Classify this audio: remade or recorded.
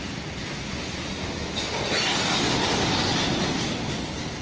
recorded